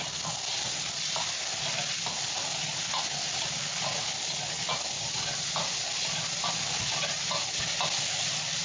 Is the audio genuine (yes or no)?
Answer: yes